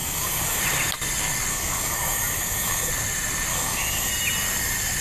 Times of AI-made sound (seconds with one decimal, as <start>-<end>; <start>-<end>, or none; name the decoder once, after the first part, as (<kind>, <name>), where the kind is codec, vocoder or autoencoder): 0.0-0.6 (codec, DAC); 1.5-2.9; 3.5-4.1

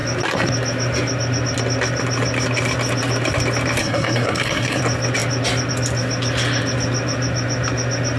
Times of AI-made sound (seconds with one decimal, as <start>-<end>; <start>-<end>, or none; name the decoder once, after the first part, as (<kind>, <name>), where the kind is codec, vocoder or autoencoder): 3.8-4.8 (codec, SNAC)

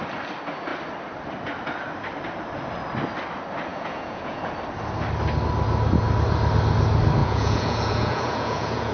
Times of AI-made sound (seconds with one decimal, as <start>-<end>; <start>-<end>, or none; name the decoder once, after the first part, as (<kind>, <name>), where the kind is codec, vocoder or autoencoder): 3.7-4.5 (vocoder, Vocos); 7.2-8.9

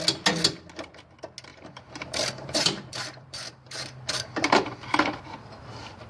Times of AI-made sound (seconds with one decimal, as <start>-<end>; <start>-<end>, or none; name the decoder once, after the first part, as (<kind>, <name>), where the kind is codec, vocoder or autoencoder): 1.5-5.2 (vocoder, BigVGAN v2)

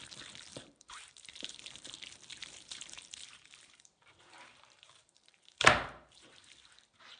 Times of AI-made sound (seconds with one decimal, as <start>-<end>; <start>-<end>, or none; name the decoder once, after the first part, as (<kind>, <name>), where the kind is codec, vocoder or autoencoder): 0.5-1.9 (vocoder, BigVGAN v2); 2.4-6.7

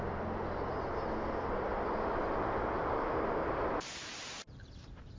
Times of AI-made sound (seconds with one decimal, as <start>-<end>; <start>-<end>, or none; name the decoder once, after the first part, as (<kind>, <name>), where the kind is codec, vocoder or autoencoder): 1.7-4.8 (vocoder, BigVGAN v2)

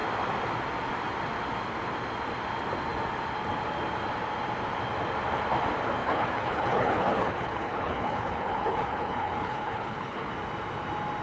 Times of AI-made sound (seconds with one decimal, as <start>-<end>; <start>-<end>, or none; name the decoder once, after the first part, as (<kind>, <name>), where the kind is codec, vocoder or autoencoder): 6.0-10.3 (codec, HILCodec)

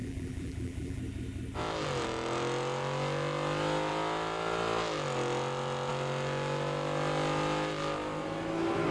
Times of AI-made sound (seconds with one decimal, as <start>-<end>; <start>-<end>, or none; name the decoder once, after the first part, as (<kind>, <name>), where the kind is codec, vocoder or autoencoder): 0.0-1.0 (vocoder, BigVGAN v2)